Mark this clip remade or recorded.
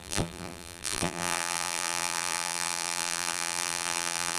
remade